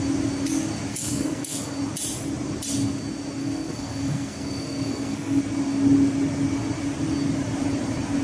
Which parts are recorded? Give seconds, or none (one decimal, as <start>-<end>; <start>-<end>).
0.0-0.9; 1.6-3.4; 5.4-8.2